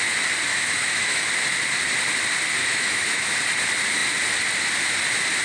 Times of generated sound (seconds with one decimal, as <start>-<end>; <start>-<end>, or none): 0.5-1.3; 2.6-3.3